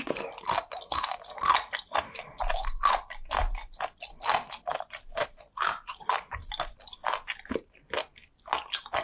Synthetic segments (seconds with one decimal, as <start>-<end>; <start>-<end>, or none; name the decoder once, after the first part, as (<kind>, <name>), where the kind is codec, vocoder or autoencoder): 4.7-6.5 (vocoder, BigVGAN v2)

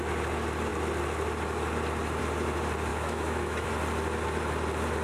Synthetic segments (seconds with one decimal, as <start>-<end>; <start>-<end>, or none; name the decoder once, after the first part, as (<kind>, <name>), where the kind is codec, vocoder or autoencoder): 2.9-3.7 (autoencoder, DAC-VAE)

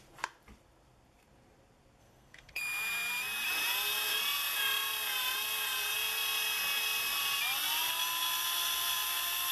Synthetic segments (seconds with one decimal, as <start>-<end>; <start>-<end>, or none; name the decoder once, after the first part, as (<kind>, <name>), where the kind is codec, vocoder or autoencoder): 2.0-2.6 (codec, SNAC)

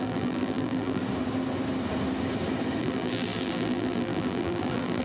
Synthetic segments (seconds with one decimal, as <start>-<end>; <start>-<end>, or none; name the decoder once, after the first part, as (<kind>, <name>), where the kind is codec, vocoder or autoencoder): 0.0-1.0 (vocoder, BigVGAN v2); 2.8-5.0

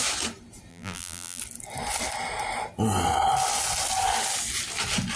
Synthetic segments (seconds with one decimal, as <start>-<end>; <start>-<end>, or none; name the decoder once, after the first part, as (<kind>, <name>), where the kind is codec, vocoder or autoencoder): 0.7-1.4 (vocoder, BigVGAN v2)